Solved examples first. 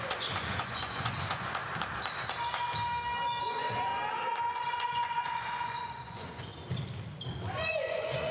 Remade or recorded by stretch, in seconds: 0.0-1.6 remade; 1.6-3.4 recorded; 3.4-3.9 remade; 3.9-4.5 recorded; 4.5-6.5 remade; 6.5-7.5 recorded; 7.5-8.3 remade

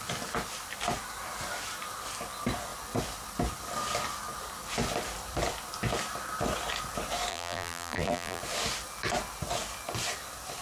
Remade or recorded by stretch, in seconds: 0.0-7.3 recorded; 7.3-8.4 remade; 8.4-10.6 recorded

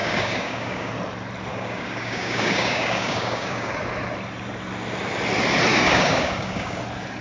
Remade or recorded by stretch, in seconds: 0.0-0.9 remade; 0.9-1.5 recorded; 1.5-3.7 remade; 3.7-5.7 recorded; 5.7-6.8 remade; 6.8-7.2 recorded

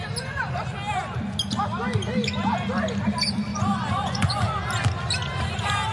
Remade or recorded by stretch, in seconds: 0.0-3.5 recorded; 3.5-4.4 remade; 4.4-5.9 recorded

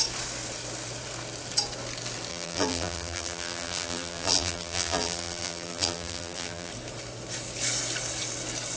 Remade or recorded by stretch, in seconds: 0.0-2.3 recorded; 2.3-6.7 remade; 6.7-8.8 recorded

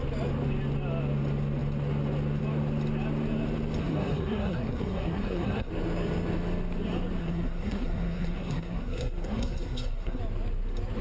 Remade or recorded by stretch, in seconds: 0.0-3.8 recorded; 3.8-5.7 remade; 5.7-7.2 recorded; 7.2-10.2 remade; 10.2-11.0 recorded